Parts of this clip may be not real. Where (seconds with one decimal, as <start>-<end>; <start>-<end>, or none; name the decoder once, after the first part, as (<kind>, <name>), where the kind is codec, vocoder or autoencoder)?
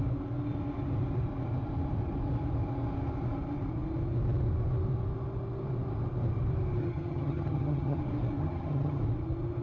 6.8-8.0 (vocoder, HiFi-GAN); 8.4-9.0